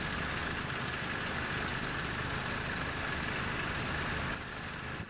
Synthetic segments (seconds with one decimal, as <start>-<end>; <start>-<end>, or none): none

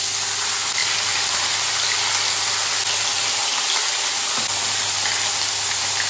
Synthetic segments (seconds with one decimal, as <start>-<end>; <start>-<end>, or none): none